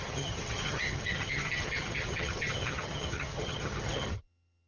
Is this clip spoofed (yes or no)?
yes